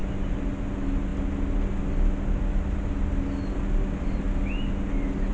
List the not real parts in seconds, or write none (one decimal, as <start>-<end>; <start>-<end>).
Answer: 0.0-0.6